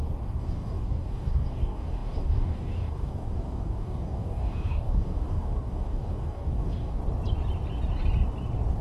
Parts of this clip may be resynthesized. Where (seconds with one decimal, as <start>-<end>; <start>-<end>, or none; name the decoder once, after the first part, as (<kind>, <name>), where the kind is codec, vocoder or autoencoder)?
0.0-7.0 (codec, DAC)